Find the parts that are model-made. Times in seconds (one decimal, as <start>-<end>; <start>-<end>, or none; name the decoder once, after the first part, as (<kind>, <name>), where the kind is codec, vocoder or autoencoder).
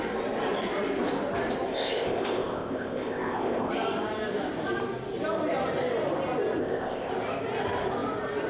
1.7-3.7 (codec, ZipCodec); 6.6-7.1